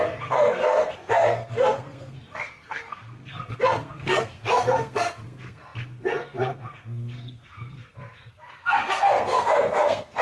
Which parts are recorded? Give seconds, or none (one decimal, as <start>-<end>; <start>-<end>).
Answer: none